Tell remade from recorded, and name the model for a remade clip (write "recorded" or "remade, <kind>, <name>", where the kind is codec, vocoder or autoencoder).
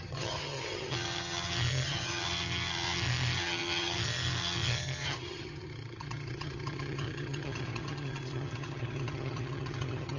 remade, vocoder, HiFi-GAN